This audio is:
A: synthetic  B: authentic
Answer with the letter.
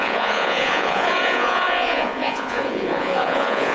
A